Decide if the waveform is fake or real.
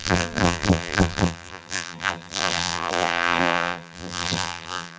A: fake